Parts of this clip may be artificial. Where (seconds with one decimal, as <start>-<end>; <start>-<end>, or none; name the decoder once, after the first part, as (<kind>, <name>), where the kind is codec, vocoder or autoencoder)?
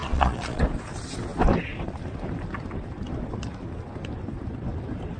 0.0-0.6 (vocoder, Vocos)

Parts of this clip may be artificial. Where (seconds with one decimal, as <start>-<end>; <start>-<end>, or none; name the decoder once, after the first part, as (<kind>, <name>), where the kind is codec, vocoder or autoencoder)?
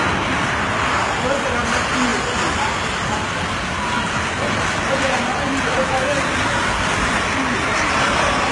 none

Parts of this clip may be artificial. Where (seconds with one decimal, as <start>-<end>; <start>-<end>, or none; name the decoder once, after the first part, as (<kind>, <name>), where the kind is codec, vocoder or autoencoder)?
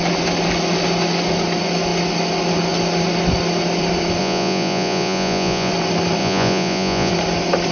4.2-5.7 (vocoder, Vocos); 6.2-7.1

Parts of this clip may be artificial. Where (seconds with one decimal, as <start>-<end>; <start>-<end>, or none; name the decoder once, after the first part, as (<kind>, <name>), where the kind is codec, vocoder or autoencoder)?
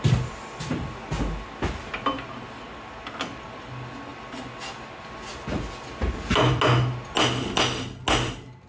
none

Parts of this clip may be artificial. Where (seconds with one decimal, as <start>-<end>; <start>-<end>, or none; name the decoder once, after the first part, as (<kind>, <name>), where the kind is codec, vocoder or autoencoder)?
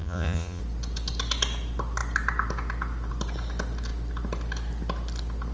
0.0-0.6 (vocoder, Vocos)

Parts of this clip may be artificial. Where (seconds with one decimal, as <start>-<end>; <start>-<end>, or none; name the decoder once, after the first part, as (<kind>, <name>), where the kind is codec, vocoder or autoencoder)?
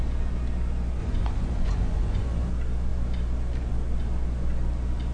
1.0-2.5 (vocoder, Vocos)